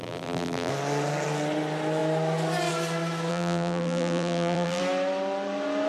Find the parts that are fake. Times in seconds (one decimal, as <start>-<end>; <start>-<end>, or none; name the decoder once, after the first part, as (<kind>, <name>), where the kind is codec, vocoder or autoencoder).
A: 0.0-0.7 (vocoder, BigVGAN v2); 3.3-4.8

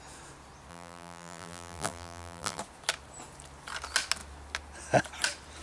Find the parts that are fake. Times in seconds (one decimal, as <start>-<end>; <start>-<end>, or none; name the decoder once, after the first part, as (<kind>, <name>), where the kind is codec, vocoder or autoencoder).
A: 0.7-2.6 (vocoder, BigVGAN v2)

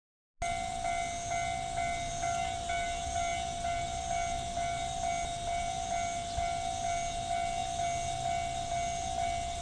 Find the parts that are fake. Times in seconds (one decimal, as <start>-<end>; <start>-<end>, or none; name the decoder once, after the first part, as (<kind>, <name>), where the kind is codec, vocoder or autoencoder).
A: none

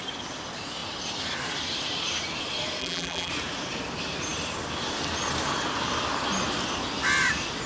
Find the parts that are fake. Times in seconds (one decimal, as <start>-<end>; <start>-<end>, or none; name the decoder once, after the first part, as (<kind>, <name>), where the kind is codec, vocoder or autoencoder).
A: 2.8-3.3 (vocoder, BigVGAN v2)